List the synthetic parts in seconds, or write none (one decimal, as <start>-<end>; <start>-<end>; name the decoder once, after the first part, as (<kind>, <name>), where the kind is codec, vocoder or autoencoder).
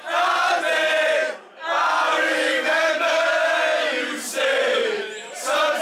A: 2.1-3.4 (codec, DAC)